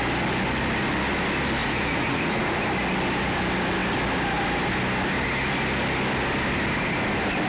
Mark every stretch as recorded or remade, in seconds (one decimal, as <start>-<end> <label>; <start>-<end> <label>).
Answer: 0.0-1.6 recorded; 1.6-2.6 remade; 2.6-7.5 recorded